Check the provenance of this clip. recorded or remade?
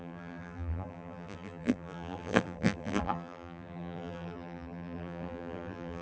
remade